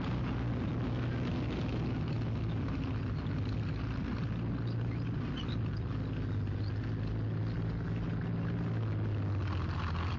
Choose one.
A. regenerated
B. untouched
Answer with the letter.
B